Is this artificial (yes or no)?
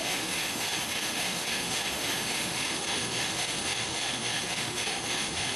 yes